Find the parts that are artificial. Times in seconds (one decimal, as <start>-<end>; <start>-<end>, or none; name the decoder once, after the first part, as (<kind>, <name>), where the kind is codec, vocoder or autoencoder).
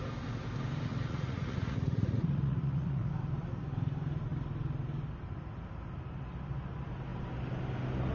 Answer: 0.9-3.1 (vocoder, Vocos)